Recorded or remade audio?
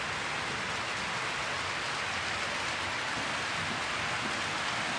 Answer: recorded